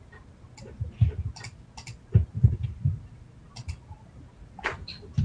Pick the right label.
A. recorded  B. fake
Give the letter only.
A